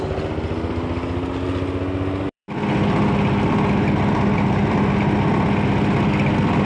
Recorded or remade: recorded